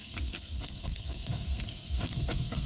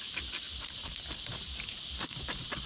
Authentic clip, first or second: second